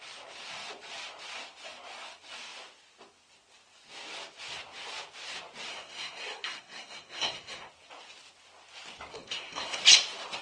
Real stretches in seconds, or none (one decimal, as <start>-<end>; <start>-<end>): 0.0-5.7; 7.7-9.1; 9.8-10.4